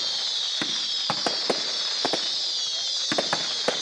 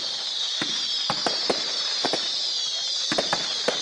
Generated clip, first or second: second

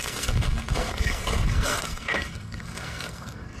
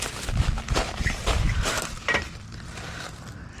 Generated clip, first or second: first